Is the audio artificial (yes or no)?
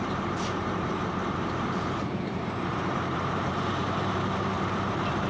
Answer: yes